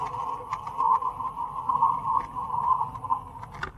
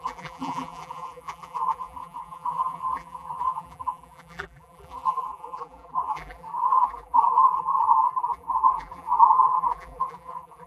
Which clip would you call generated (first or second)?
second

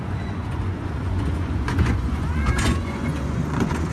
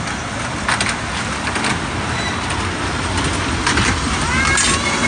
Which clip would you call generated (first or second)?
first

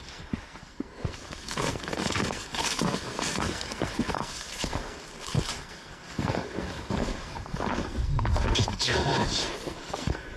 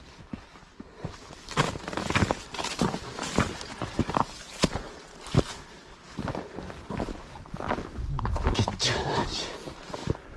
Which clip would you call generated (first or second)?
first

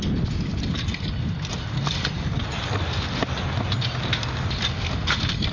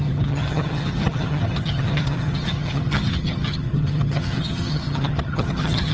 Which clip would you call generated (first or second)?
second